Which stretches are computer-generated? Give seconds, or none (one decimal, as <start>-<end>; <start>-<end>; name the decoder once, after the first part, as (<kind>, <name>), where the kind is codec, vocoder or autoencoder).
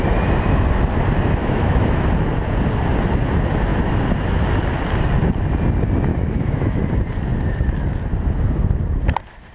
1.4-2.1 (autoencoder, DAC-VAE); 6.1-6.8